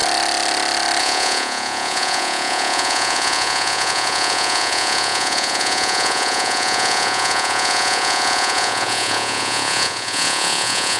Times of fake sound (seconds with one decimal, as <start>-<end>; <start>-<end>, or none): 1.0-11.0